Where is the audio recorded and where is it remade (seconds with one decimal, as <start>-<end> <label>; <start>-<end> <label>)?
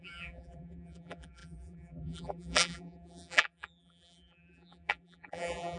0.0-5.8 remade